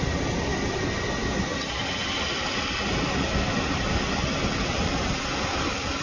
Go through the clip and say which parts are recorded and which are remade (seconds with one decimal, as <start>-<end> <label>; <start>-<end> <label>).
0.0-6.0 recorded